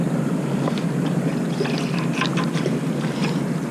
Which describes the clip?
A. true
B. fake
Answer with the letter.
A